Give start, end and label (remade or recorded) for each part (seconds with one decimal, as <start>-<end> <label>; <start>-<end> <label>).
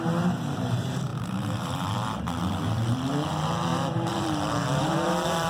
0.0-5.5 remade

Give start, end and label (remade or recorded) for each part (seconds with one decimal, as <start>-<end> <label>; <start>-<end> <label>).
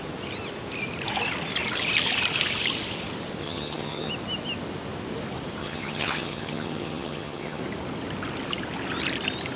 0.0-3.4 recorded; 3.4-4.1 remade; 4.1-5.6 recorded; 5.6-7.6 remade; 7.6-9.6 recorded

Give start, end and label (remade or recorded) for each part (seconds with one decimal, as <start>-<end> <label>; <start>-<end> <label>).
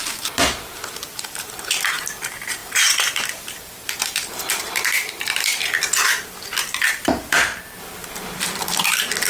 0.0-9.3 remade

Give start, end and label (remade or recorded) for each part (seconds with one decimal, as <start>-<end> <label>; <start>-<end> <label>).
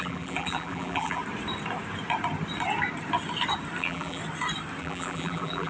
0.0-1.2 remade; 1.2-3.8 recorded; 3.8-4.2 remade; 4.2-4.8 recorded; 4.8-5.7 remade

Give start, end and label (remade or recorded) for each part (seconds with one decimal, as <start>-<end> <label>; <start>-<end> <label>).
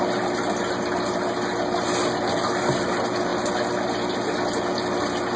0.0-5.4 recorded